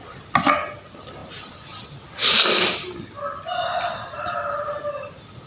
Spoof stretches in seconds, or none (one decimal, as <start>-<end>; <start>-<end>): none